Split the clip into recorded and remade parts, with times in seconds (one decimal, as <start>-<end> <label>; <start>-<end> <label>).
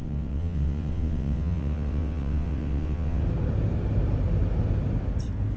0.0-3.2 remade; 3.2-5.6 recorded